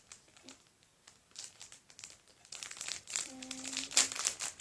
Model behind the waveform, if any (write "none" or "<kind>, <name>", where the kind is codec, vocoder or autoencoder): none